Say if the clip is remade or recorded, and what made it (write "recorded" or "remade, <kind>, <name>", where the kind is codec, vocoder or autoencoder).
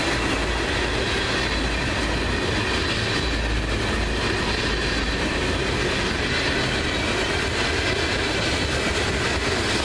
recorded